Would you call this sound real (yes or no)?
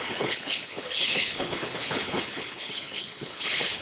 no